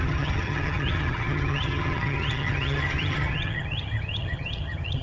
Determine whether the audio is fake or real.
fake